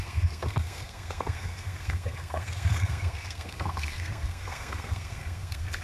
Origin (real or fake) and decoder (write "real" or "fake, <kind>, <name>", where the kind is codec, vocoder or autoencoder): fake, codec, SNAC